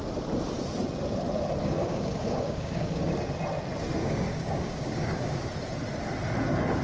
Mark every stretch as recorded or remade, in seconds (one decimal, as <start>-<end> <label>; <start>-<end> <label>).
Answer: 0.0-1.6 recorded; 1.6-3.1 remade; 3.1-4.0 recorded; 4.0-5.5 remade; 5.5-6.8 recorded